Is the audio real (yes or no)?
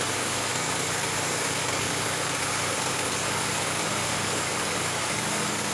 no